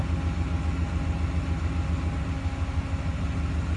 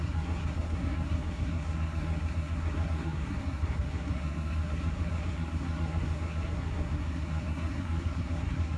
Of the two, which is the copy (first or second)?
second